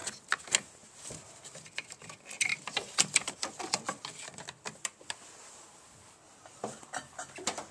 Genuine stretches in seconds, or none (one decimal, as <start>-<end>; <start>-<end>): 0.0-1.1